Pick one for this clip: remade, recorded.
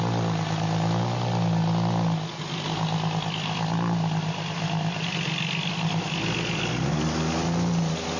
recorded